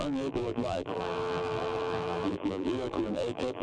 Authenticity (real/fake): fake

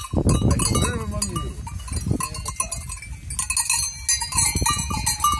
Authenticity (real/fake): real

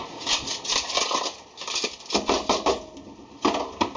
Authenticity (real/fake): real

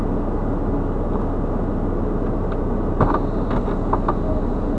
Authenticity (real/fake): real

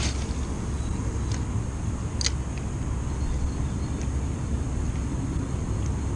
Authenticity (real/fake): real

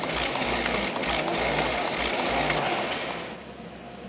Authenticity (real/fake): real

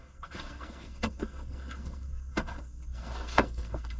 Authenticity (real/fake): fake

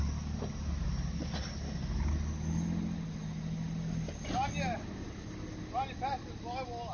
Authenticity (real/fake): real